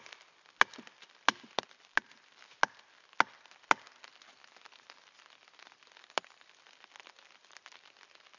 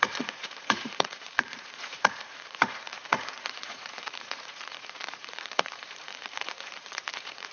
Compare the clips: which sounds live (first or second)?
first